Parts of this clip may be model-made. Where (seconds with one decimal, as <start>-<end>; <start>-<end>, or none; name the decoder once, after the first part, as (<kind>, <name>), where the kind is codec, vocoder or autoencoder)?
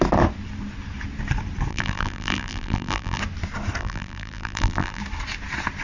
1.7-3.2 (vocoder, BigVGAN v2); 3.8-5.0